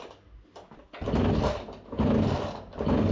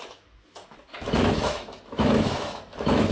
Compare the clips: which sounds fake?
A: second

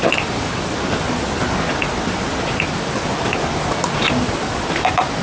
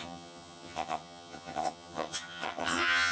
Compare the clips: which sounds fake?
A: second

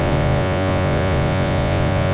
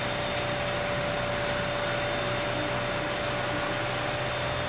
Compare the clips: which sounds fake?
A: first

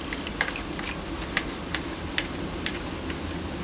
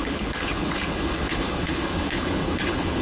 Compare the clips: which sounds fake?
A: second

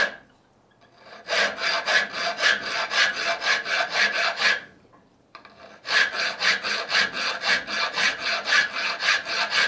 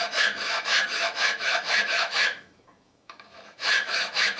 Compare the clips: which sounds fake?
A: second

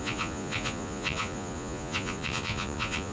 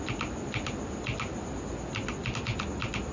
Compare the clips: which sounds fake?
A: first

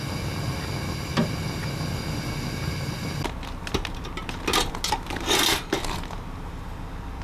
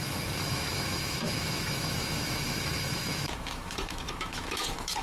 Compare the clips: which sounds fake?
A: second